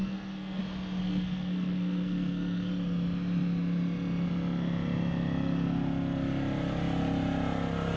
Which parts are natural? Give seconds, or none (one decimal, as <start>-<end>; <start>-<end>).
0.6-1.0; 2.7-8.0

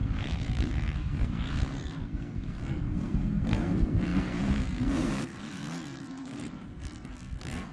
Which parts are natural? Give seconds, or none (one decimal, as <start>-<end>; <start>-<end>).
none

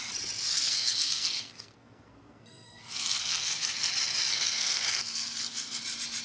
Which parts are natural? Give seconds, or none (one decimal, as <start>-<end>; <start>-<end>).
0.0-0.5; 3.9-4.3; 5.8-6.2